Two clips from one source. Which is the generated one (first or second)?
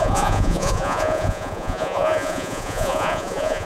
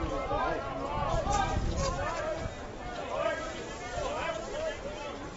first